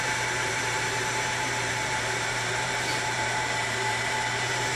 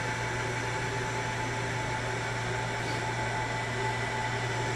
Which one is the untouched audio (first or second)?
second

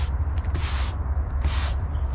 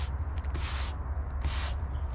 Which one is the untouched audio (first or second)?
second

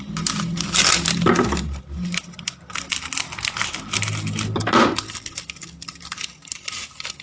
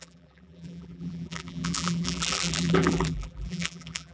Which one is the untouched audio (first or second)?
first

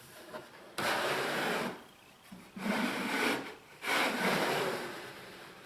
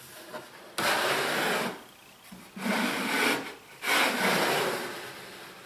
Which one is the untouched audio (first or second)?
second